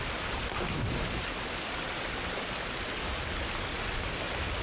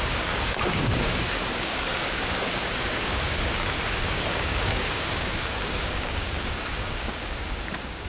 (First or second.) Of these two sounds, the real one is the first